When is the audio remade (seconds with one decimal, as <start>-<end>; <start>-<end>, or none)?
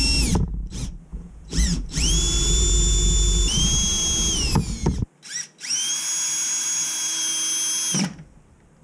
1.1-2.1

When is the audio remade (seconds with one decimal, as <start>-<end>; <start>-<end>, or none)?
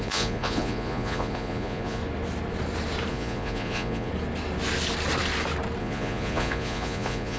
0.0-2.0; 3.1-4.1; 5.8-7.4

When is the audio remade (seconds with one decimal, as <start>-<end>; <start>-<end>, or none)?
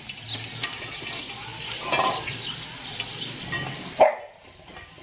none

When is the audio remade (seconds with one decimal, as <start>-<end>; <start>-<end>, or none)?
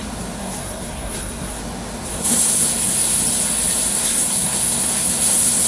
0.4-1.6; 2.1-3.2; 3.9-5.7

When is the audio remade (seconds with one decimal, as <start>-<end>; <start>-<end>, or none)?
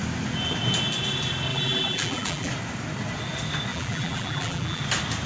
1.5-2.5; 3.7-4.8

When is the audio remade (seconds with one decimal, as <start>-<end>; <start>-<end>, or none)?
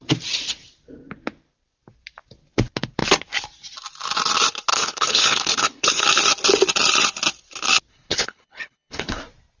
4.7-6.0; 7.9-9.2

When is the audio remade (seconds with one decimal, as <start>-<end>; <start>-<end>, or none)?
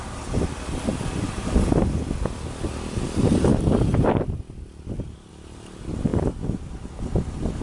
none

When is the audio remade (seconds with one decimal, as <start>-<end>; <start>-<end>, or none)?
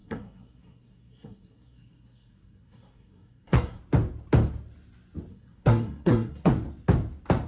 0.0-3.8; 5.3-6.5